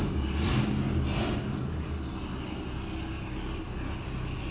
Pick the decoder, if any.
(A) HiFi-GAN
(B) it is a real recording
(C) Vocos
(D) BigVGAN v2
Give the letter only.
B